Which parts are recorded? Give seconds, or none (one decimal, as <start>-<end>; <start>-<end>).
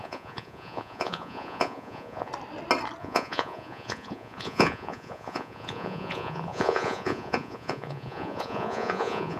2.3-3.0